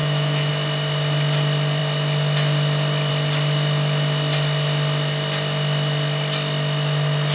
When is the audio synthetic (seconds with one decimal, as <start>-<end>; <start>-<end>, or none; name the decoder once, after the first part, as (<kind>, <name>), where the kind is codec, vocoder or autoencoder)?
0.0-0.5 (autoencoder, DAC-VAE)